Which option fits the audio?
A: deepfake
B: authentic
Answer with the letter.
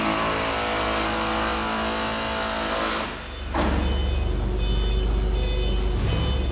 B